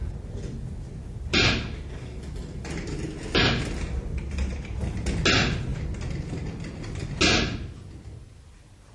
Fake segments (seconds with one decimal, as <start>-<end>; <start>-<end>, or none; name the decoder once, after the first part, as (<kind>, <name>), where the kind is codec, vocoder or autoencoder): none